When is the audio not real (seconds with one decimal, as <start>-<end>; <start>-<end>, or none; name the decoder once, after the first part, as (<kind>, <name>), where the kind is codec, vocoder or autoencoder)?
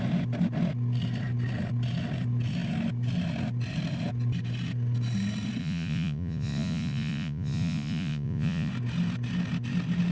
5.6-8.7 (vocoder, Vocos)